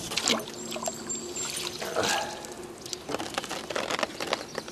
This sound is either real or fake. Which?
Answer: real